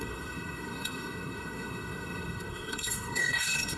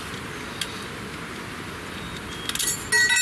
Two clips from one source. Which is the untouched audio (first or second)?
second